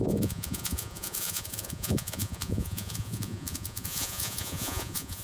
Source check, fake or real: fake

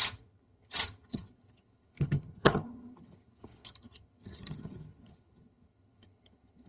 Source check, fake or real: fake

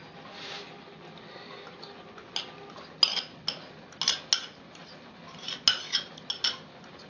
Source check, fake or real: real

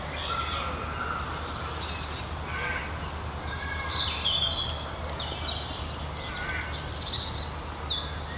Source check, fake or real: real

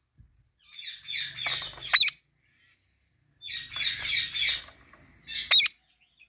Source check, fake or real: real